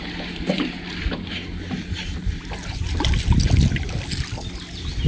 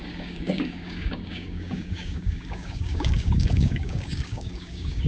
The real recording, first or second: first